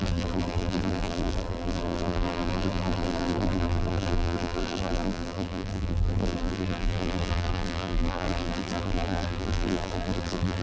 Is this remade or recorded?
remade